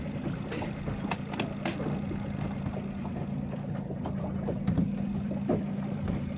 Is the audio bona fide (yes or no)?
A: yes